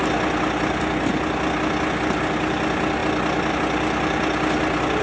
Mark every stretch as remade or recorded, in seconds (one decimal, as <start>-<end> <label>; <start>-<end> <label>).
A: 0.0-5.0 recorded